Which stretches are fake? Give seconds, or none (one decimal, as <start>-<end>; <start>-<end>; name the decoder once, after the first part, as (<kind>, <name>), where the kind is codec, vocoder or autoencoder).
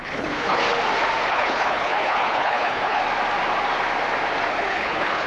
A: 0.0-0.6 (codec, HILCodec); 1.3-3.0; 4.5-5.3